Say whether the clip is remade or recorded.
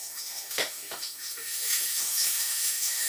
remade